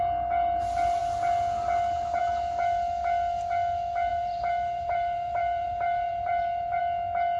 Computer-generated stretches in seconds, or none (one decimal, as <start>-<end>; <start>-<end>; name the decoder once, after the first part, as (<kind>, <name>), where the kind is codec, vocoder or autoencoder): 4.1-6.8 (vocoder, BigVGAN v2)